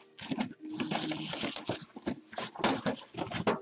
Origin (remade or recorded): recorded